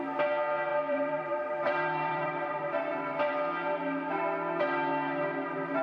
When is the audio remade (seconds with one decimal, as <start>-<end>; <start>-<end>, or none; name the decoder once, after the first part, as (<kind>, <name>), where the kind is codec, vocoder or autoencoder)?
0.7-3.3 (vocoder, BigVGAN v2)